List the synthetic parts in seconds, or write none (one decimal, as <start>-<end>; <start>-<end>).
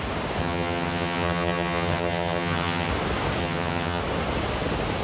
0.4-2.9; 3.4-4.0